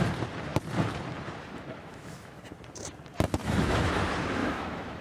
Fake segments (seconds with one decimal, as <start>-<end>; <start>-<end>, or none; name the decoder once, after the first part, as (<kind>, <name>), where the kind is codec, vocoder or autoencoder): 1.8-2.4 (autoencoder, DAC-VAE); 3.4-3.9; 4.4-5.0